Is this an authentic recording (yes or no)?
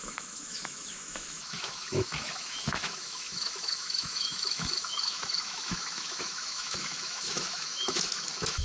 no